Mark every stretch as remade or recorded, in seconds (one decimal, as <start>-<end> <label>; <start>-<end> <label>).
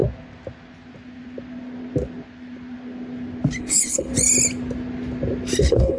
0.0-3.6 recorded; 3.6-4.1 remade; 4.1-5.6 recorded; 5.6-6.0 remade